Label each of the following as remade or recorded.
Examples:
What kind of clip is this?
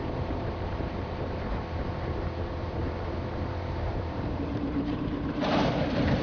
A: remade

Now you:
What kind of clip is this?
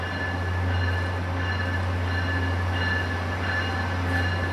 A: recorded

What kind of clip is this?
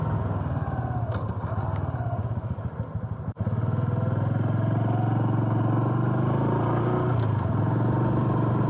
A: recorded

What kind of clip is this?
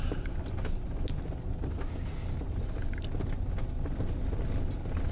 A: recorded